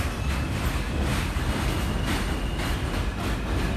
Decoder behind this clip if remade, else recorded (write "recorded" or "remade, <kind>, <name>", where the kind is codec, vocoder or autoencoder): recorded